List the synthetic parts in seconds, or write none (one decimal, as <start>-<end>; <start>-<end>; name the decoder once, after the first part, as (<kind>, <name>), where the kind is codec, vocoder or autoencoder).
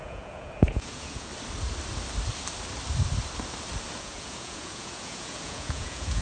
0.0-1.3 (vocoder, Vocos); 4.0-6.2